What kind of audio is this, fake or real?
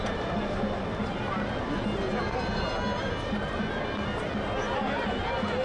real